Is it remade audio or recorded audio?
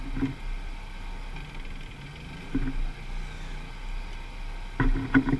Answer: recorded